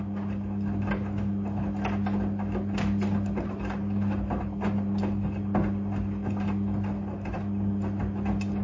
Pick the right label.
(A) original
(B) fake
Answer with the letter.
A